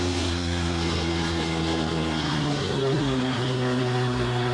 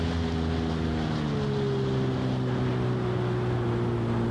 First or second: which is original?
second